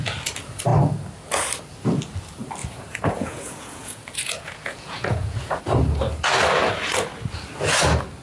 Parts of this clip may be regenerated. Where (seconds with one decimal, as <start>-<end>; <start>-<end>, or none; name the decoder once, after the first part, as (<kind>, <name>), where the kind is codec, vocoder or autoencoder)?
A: 2.6-5.6 (vocoder, Vocos)